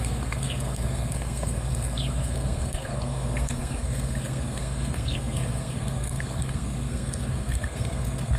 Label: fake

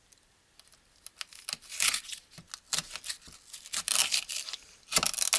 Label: real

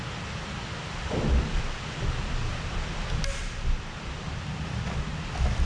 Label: real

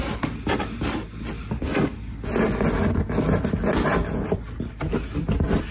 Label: real